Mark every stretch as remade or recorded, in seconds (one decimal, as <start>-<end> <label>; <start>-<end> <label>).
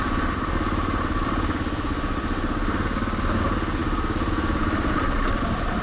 0.0-5.8 recorded